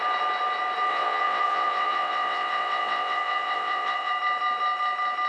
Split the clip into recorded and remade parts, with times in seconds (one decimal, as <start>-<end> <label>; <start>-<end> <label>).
0.0-0.9 recorded; 0.9-4.1 remade; 4.1-5.3 recorded